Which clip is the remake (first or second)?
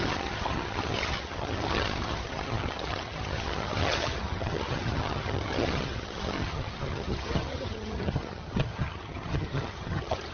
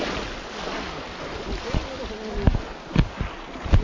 first